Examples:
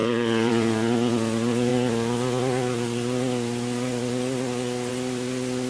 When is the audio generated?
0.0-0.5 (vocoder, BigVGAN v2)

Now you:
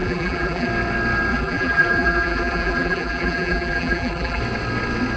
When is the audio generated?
0.0-0.7 (vocoder, BigVGAN v2); 1.3-4.4

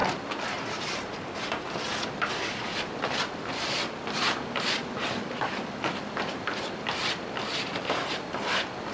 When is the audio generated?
2.3-8.9 (vocoder, BigVGAN v2)

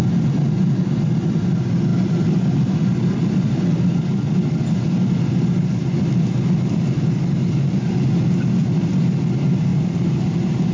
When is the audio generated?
0.0-0.6 (vocoder, BigVGAN v2); 1.9-7.1; 9.7-10.7

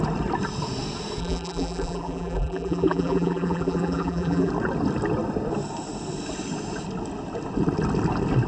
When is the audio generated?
1.2-4.5 (vocoder, BigVGAN v2)

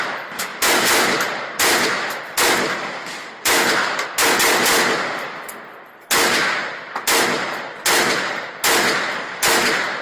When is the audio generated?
0.5-3.3 (vocoder, BigVGAN v2)